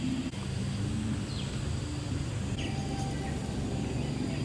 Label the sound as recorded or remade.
recorded